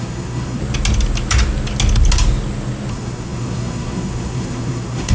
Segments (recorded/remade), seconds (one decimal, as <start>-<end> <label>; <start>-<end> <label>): 0.0-0.6 remade; 0.6-2.9 recorded; 2.9-5.1 remade